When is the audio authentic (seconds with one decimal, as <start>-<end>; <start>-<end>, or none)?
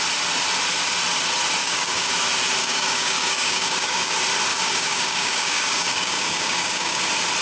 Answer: 0.0-1.6; 2.1-2.6; 4.1-4.5; 7.0-7.4